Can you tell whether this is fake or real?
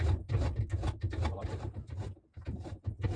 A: real